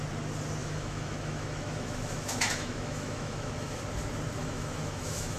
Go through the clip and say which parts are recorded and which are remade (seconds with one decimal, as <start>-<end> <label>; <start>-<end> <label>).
0.0-0.6 recorded; 0.6-3.8 remade; 3.8-4.4 recorded; 4.4-5.4 remade